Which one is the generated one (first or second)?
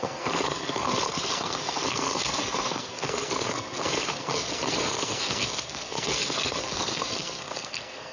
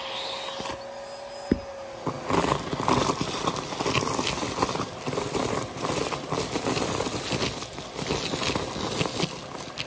first